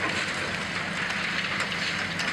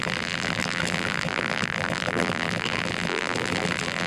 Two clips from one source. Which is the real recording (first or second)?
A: first